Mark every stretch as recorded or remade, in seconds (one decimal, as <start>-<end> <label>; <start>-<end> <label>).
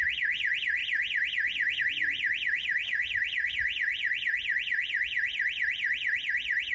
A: 0.0-3.9 recorded; 3.9-6.3 remade; 6.3-6.7 recorded